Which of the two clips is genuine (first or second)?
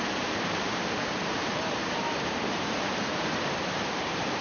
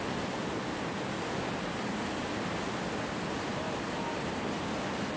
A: second